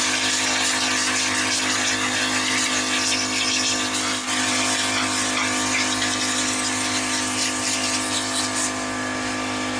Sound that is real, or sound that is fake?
real